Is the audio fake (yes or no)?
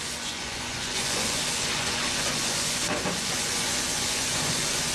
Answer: yes